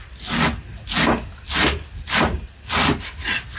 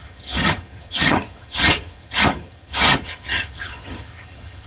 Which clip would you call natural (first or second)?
first